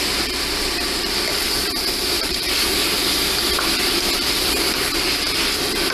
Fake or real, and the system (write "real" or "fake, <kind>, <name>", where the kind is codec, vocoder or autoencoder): fake, vocoder, BigVGAN v2